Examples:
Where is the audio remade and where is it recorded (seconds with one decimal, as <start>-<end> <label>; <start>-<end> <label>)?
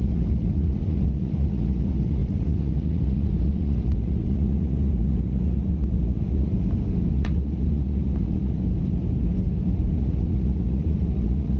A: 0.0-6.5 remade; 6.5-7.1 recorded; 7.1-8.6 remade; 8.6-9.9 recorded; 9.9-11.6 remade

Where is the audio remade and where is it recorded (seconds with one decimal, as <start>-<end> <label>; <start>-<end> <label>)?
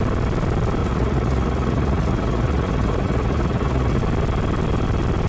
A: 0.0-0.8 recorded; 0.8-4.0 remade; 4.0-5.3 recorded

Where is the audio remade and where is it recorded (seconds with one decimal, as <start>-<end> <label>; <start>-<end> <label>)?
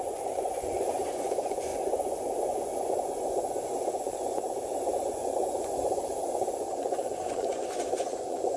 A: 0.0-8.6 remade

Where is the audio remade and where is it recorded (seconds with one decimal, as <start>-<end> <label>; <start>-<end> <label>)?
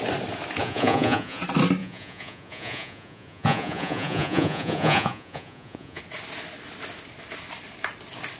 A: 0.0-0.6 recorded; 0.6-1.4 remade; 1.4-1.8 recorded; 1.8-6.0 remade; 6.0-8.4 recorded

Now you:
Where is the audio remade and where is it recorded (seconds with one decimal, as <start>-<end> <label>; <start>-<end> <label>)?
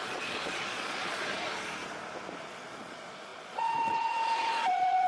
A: 0.0-1.4 remade; 1.4-2.5 recorded; 2.5-5.1 remade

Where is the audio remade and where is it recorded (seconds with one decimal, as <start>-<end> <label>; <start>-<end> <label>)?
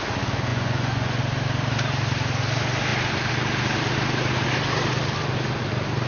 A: 0.0-0.5 recorded; 0.5-1.2 remade; 1.2-6.1 recorded